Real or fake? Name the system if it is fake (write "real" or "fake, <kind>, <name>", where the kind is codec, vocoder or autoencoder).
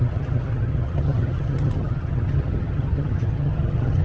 fake, vocoder, HiFi-GAN